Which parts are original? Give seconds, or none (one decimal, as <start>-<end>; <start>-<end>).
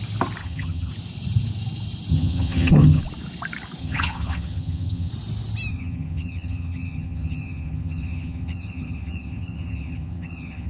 0.0-0.4; 0.9-2.1; 3.0-3.8; 5.1-5.7